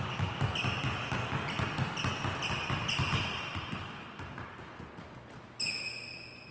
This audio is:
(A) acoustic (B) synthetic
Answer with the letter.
A